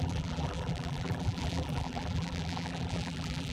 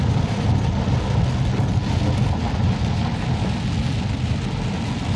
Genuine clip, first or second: second